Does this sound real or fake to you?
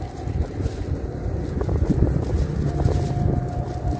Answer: real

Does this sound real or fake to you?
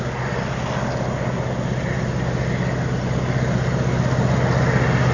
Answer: real